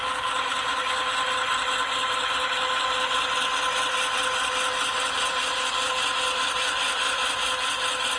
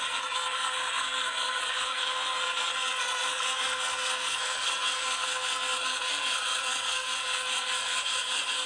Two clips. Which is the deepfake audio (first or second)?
second